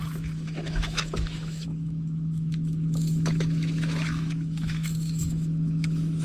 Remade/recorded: remade